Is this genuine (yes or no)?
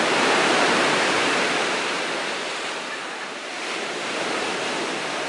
no